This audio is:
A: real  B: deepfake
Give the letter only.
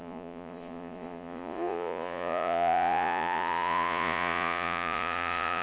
B